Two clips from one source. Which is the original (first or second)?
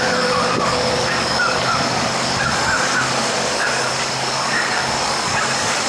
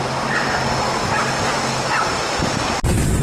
second